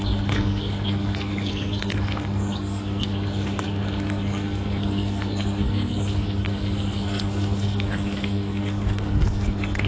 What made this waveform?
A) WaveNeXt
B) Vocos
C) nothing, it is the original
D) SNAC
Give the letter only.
D